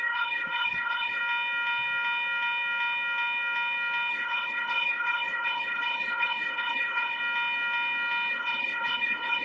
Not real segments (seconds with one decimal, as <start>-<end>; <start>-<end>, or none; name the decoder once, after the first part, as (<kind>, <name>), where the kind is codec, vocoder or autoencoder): 0.0-1.2 (codec, HILCodec); 4.1-7.2; 8.3-9.4